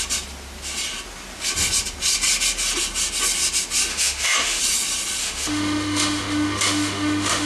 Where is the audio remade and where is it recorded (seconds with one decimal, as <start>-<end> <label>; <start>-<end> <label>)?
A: 0.0-3.9 recorded; 3.9-4.6 remade; 4.6-5.2 recorded; 5.2-7.5 remade